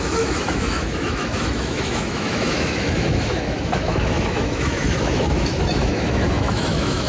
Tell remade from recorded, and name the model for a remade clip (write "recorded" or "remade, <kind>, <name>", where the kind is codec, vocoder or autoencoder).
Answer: remade, autoencoder, DAC-VAE